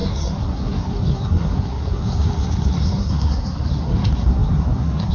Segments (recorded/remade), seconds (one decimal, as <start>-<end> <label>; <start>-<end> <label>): 0.0-5.1 remade